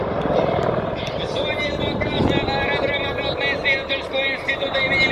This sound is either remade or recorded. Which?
recorded